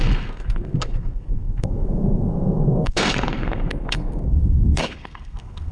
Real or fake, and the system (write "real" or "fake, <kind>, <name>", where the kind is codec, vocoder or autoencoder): fake, codec, SNAC